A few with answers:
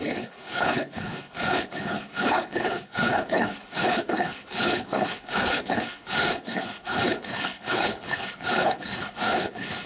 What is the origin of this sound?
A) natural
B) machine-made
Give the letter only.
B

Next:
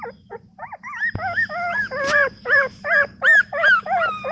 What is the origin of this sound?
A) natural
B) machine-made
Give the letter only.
A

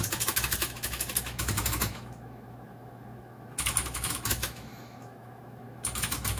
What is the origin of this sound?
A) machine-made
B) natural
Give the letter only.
A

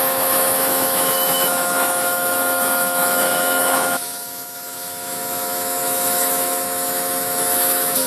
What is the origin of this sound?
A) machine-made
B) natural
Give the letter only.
A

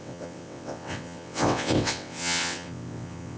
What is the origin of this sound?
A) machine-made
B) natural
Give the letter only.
A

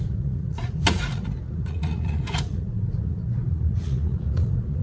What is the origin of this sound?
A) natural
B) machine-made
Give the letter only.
B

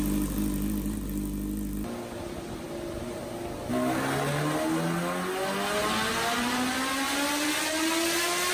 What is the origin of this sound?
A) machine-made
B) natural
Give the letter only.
B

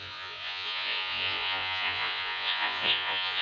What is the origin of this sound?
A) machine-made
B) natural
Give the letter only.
A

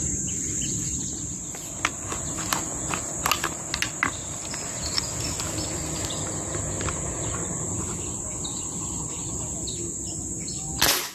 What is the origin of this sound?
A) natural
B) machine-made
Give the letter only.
A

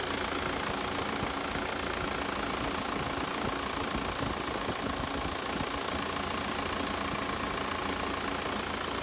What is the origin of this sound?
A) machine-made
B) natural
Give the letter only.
B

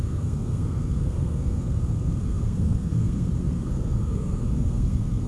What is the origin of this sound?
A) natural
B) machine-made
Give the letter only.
B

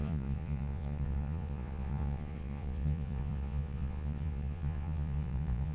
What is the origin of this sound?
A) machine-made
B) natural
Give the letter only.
A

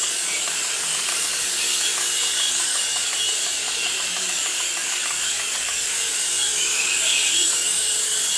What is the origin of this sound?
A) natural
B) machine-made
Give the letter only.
B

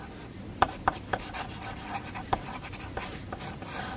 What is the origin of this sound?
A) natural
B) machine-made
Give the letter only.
A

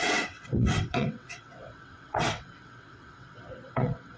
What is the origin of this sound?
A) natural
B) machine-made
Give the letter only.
B